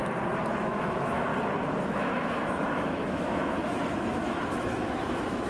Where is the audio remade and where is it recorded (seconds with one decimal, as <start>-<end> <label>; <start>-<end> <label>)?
0.0-0.6 recorded; 0.6-1.3 remade; 1.3-1.8 recorded; 1.8-5.5 remade